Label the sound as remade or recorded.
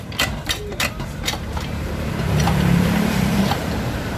remade